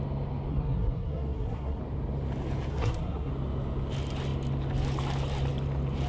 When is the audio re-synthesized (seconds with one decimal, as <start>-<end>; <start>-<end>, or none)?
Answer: 0.5-1.8; 2.7-3.3